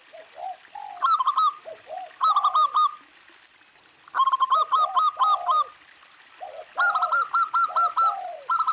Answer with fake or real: real